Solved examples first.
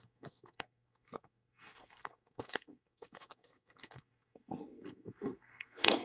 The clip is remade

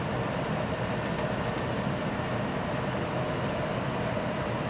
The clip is recorded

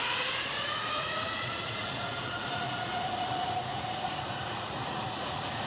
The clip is remade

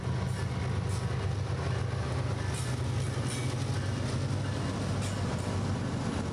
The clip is recorded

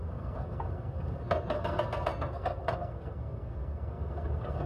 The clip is remade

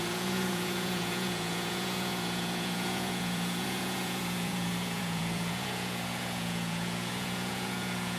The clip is remade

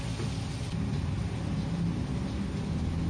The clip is recorded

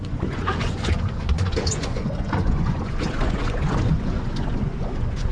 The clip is remade